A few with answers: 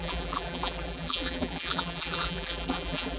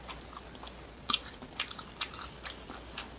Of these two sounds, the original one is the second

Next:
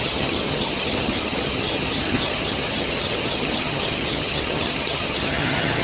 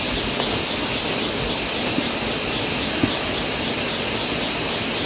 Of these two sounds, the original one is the second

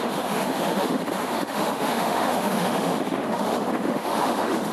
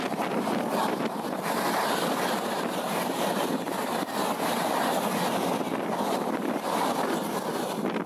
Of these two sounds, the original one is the second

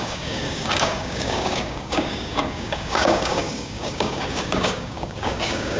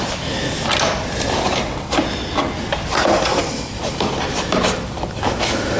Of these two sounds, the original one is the second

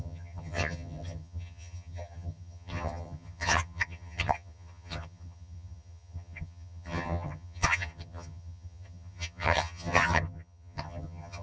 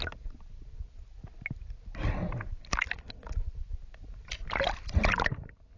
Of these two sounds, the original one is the second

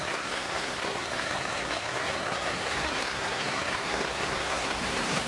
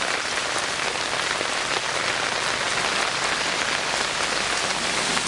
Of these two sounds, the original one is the second